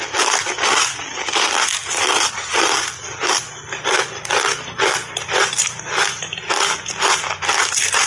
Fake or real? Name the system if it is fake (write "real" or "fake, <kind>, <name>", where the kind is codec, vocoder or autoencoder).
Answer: real